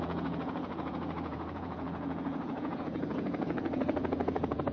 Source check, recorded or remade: remade